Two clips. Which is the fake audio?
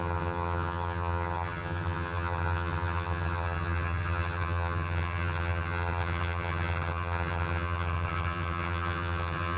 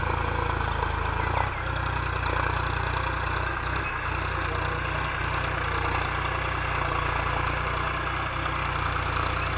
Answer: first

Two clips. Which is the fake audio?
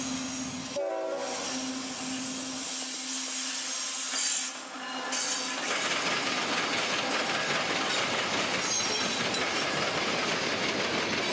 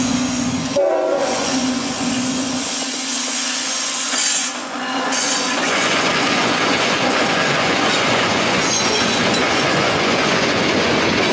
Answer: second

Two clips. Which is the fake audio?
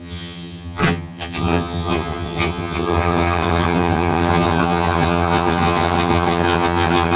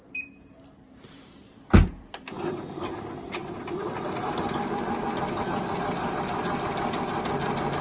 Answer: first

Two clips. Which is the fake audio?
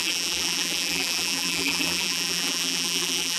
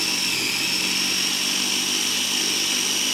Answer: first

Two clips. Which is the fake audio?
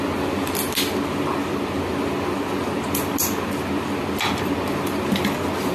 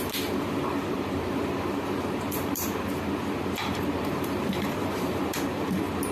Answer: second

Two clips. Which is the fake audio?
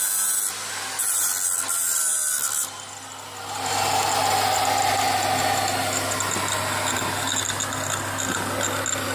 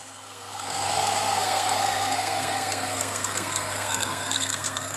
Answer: second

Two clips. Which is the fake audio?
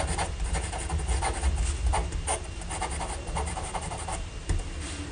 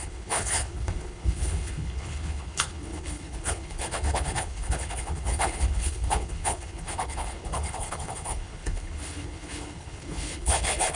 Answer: second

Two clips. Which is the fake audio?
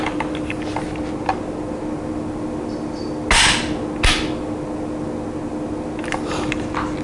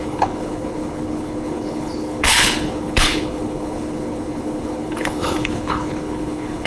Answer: second